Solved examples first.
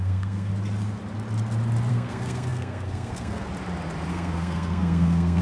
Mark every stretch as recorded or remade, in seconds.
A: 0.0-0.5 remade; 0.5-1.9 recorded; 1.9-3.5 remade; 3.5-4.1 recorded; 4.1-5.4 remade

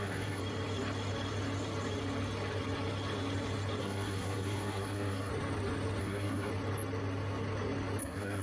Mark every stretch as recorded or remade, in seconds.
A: 0.0-0.4 remade; 0.4-3.8 recorded; 3.8-5.3 remade; 5.3-6.0 recorded; 6.0-6.5 remade; 6.5-8.0 recorded; 8.0-8.4 remade

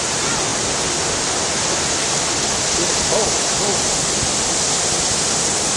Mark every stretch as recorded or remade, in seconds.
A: 0.0-5.8 recorded

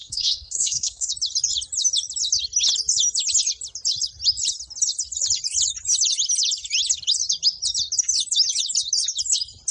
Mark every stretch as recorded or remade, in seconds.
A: 0.0-1.1 remade; 1.1-9.7 recorded

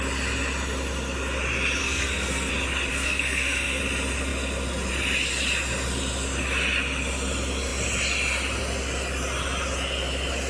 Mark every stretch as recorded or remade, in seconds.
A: 0.0-1.8 recorded; 1.8-2.5 remade; 2.5-2.9 recorded; 2.9-3.8 remade; 3.8-10.5 recorded

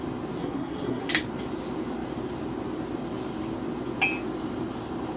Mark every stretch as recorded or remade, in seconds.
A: 0.0-0.4 recorded; 0.4-1.1 remade; 1.1-5.2 recorded

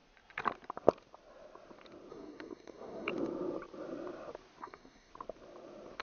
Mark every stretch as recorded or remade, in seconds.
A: 0.0-2.1 recorded; 2.1-3.1 remade; 3.1-4.6 recorded; 4.6-5.1 remade; 5.1-6.0 recorded

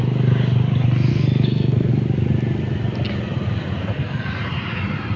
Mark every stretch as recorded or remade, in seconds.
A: 0.0-1.1 recorded; 1.1-1.9 remade; 1.9-3.8 recorded; 3.8-4.3 remade; 4.3-5.2 recorded